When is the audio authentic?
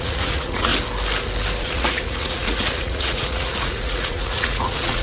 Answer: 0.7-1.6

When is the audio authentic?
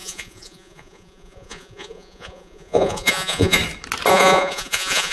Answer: 3.6-4.1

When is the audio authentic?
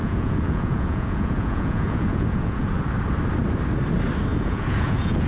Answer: 2.8-4.3